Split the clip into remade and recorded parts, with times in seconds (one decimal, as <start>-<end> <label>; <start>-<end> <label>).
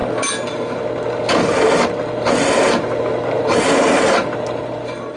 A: 0.0-5.2 recorded